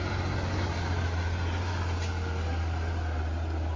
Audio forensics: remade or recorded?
recorded